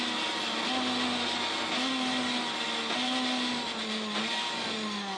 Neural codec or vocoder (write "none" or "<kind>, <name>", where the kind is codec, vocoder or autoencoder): none